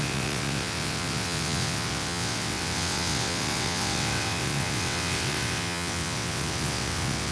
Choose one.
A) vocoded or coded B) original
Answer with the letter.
A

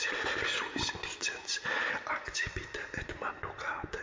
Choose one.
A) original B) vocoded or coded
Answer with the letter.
A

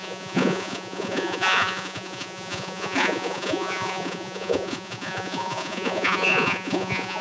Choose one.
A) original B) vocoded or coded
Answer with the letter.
B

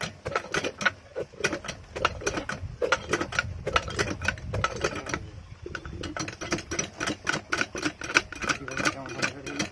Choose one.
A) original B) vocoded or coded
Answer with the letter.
A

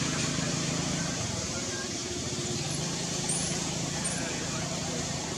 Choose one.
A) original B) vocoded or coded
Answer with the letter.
B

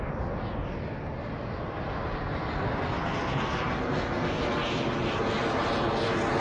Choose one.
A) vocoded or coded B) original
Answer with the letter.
B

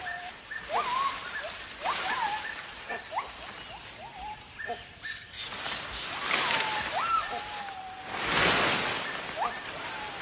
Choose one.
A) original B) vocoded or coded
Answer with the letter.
A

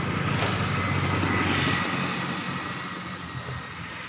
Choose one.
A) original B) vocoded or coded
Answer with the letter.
A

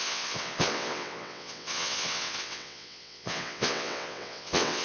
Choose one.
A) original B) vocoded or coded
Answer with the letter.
B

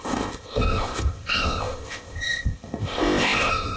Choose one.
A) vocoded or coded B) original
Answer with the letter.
A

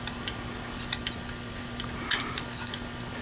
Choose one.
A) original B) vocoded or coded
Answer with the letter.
A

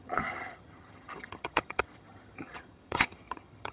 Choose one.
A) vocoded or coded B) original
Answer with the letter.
A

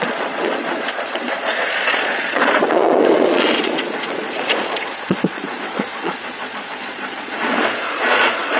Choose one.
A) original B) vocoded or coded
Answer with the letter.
B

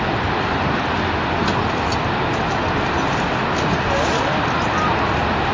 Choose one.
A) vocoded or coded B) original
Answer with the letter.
B